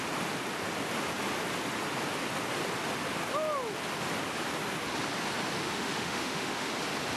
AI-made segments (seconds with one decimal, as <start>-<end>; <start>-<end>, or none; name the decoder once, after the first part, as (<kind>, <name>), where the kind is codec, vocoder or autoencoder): 5.6-6.7 (autoencoder, DAC-VAE)

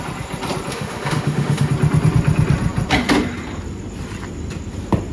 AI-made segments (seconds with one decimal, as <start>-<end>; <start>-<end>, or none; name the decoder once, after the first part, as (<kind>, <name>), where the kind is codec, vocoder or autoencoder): 0.7-1.7 (autoencoder, DAC-VAE)

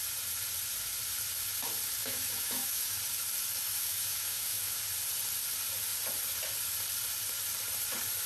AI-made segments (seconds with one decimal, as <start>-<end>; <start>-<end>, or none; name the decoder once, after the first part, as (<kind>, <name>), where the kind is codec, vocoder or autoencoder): 2.0-3.0 (autoencoder, DAC-VAE); 3.7-4.8